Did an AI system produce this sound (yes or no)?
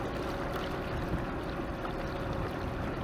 no